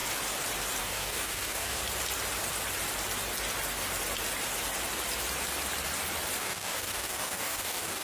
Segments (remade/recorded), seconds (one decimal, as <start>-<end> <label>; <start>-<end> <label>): 0.0-0.8 recorded; 0.8-1.8 remade; 1.8-6.4 recorded; 6.4-8.0 remade